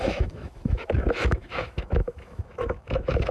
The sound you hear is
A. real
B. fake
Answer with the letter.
B